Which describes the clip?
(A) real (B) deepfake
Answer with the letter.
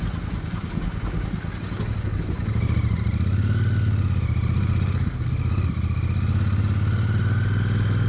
A